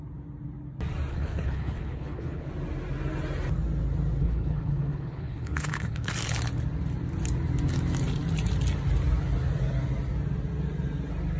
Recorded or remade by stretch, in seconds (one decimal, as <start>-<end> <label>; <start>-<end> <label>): 0.0-1.1 recorded; 1.1-2.5 remade; 2.5-4.2 recorded; 4.2-6.1 remade; 6.1-11.4 recorded